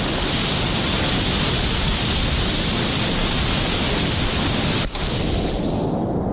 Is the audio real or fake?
real